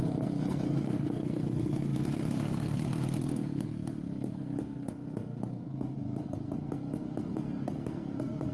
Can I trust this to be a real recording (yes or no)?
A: no